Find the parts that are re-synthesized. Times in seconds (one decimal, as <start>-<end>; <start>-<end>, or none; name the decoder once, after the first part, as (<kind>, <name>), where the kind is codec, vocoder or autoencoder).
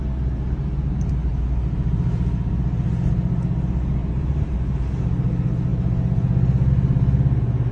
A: 4.0-4.9 (vocoder, BigVGAN v2)